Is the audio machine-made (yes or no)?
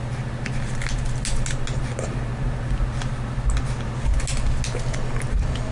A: no